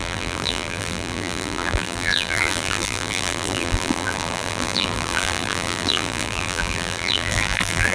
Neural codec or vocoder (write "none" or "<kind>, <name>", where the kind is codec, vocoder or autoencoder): vocoder, BigVGAN v2